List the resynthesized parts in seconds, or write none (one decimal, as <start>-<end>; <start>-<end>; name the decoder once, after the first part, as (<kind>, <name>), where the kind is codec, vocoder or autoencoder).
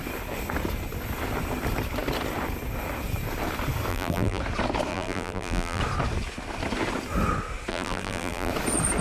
3.9-4.4 (vocoder, BigVGAN v2); 4.9-5.8; 7.7-8.5